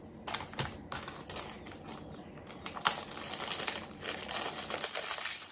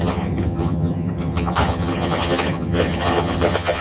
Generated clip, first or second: second